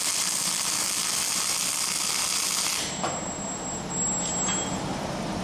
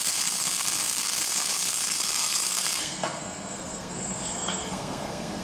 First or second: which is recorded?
first